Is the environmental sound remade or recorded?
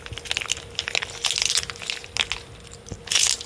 recorded